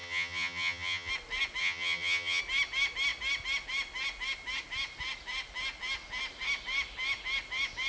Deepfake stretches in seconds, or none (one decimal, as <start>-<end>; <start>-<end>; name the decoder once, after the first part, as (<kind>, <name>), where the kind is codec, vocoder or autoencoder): 0.0-1.1 (vocoder, HiFi-GAN); 1.6-2.4